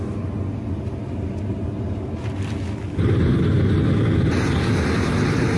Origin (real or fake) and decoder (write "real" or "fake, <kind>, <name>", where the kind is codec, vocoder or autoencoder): real